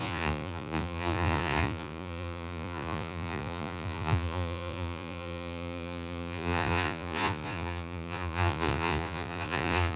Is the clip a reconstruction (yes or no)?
yes